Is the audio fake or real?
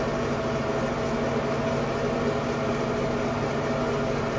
real